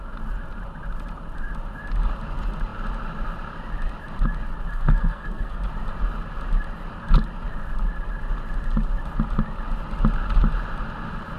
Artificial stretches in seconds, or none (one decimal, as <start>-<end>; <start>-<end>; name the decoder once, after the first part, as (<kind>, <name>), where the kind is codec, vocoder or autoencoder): 4.7-5.6 (codec, SNAC)